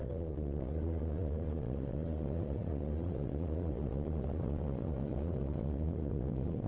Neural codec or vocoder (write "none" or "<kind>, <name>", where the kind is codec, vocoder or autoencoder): vocoder, Vocos